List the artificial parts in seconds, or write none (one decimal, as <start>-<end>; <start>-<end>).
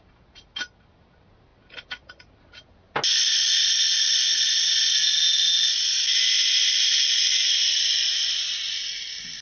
none